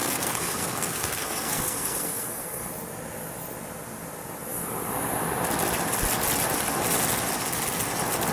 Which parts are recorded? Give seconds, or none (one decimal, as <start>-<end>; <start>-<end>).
2.7-8.3